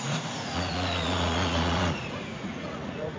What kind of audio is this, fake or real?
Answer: fake